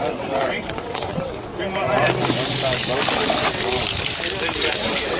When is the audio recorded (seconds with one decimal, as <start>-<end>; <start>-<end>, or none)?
1.5-4.6